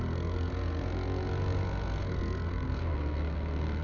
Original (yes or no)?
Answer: no